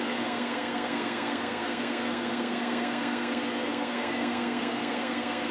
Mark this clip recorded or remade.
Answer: remade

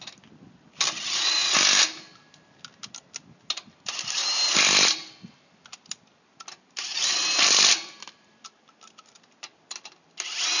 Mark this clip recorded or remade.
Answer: recorded